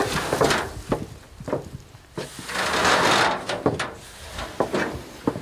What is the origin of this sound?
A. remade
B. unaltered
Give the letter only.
B